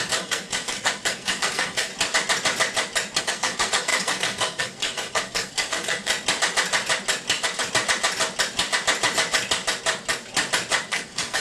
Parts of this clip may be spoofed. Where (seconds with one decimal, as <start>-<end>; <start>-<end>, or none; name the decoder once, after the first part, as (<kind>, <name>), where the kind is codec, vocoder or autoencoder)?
0.0-1.9 (codec, SNAC); 3.2-6.1; 10.9-11.4

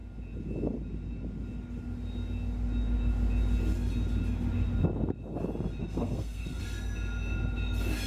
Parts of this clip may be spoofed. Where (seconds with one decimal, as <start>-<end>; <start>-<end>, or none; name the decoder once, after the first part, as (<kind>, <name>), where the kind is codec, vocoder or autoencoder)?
5.8-6.6 (codec, SNAC)